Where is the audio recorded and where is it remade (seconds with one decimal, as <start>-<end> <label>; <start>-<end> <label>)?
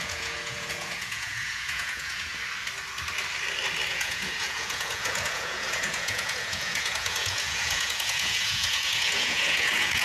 0.0-2.3 remade; 2.3-3.9 recorded; 3.9-10.0 remade